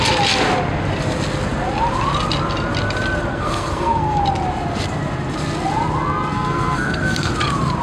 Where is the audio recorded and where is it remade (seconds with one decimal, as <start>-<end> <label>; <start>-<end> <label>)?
0.0-3.3 recorded; 3.3-4.2 remade; 4.2-6.3 recorded; 6.3-7.3 remade; 7.3-7.8 recorded